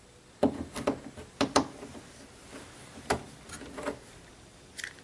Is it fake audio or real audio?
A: real